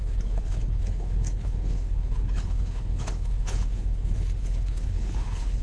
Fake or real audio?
fake